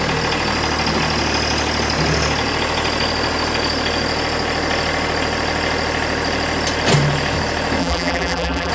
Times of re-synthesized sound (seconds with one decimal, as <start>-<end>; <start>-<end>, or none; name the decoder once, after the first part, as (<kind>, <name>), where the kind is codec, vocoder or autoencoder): 7.8-8.7 (vocoder, BigVGAN v2)

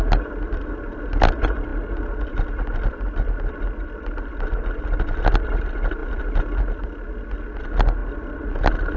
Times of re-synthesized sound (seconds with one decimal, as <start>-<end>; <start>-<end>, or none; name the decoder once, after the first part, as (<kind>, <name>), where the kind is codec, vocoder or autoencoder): 8.0-8.5 (vocoder, BigVGAN v2)

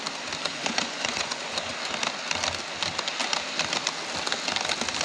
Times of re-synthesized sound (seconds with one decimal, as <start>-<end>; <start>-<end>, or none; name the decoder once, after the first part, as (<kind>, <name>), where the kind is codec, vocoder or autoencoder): 0.5-1.7 (vocoder, Vocos)

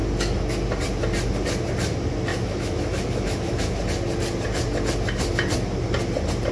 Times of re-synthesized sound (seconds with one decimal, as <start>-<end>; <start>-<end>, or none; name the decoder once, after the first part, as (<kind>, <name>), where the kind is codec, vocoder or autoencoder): 2.3-3.8 (autoencoder, DAC-VAE)

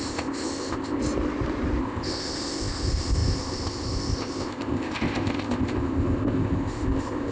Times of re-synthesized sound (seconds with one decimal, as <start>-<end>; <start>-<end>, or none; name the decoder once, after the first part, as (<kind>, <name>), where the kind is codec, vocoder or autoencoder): 0.0-1.0 (codec, ZipCodec); 1.8-7.3

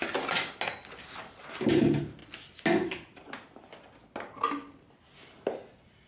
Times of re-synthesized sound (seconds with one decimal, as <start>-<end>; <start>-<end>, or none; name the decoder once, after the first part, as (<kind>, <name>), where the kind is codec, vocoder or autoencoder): none